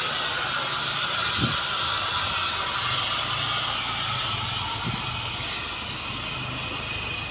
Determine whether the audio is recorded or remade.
recorded